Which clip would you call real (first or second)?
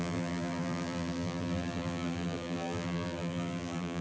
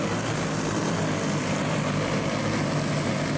second